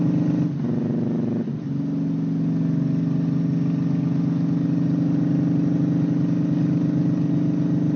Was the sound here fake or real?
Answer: real